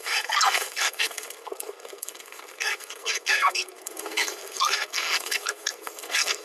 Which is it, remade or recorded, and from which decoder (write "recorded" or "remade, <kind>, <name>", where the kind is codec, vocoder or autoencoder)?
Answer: remade, codec, SNAC